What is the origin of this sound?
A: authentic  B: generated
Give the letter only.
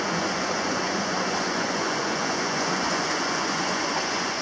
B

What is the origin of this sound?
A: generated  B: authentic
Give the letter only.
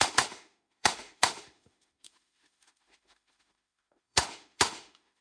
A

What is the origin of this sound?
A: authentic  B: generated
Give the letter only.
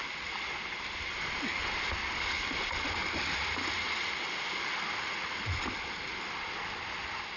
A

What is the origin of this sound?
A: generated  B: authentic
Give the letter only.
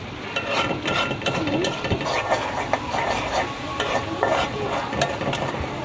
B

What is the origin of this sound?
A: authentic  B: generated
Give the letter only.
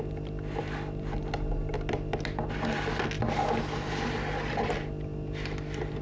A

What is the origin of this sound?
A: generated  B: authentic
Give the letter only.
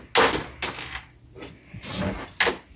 B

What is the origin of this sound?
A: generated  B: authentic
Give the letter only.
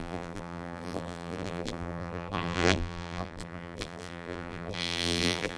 A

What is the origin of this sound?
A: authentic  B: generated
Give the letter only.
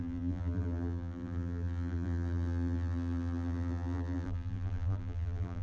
B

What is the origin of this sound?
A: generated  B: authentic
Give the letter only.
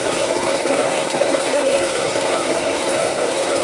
A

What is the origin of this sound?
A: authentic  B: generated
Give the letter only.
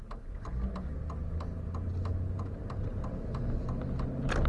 A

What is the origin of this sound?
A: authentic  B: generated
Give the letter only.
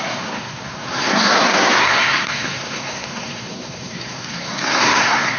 B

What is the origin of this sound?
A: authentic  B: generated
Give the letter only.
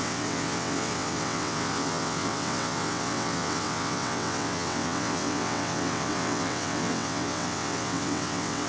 B